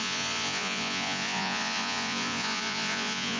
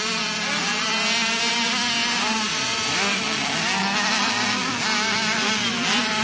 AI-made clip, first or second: first